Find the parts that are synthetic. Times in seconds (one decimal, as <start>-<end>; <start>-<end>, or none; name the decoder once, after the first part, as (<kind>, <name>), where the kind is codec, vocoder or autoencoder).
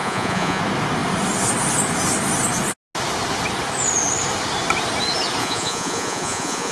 0.0-0.6 (vocoder, Vocos); 5.4-6.7